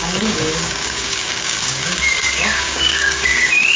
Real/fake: fake